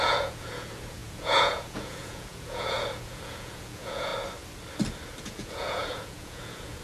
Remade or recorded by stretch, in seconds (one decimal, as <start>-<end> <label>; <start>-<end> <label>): 0.0-4.1 remade; 4.1-5.2 recorded; 5.2-6.8 remade